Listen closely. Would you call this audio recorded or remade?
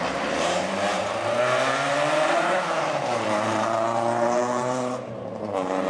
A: remade